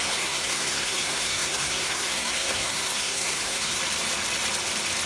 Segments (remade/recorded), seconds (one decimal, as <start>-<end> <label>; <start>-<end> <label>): 0.0-3.8 remade; 3.8-5.1 recorded